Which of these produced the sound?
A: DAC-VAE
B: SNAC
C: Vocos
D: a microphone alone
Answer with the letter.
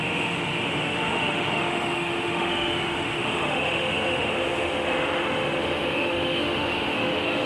A